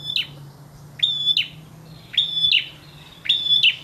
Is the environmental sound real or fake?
real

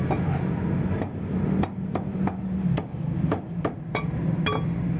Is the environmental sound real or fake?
real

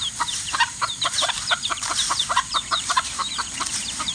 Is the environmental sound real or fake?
fake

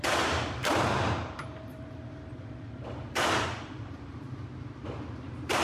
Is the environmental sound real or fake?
fake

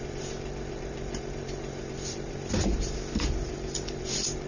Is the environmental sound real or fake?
fake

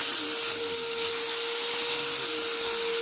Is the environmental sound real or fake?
real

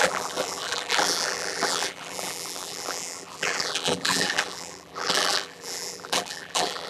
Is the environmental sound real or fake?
fake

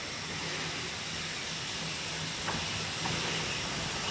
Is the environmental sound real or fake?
real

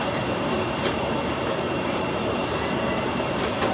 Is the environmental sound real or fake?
fake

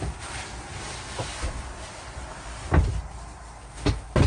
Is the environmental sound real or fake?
real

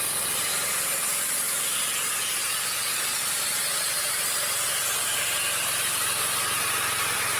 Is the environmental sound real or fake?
real